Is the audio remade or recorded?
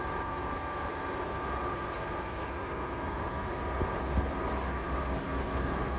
recorded